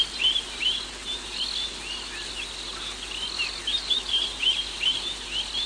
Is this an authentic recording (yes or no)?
yes